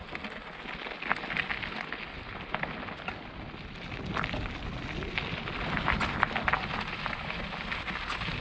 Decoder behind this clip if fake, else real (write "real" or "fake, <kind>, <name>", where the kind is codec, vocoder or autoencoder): real